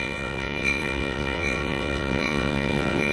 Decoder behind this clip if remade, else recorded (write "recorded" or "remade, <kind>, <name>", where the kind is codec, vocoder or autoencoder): remade, vocoder, WaveNeXt